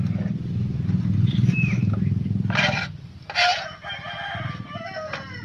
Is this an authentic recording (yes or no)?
yes